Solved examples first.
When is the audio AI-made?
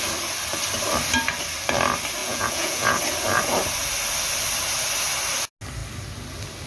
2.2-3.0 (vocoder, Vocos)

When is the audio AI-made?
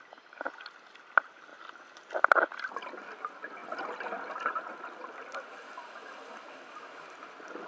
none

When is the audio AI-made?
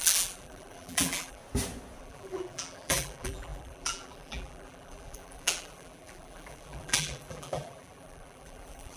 0.0-1.4 (vocoder, BigVGAN v2); 2.0-9.0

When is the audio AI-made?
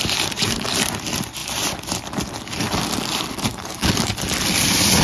3.5-4.1 (codec, DAC)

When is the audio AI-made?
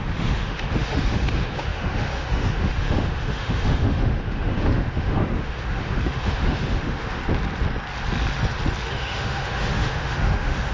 0.0-7.2 (autoencoder, DAC-VAE); 8.9-10.7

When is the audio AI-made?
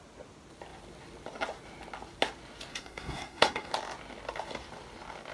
2.7-3.7 (codec, SNAC)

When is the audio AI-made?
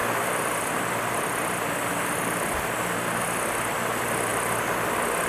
none